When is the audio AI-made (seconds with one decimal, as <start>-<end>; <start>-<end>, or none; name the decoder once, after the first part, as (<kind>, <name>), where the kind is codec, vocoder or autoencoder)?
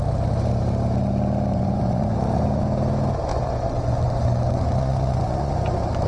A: 1.5-2.6 (vocoder, Vocos); 3.3-5.5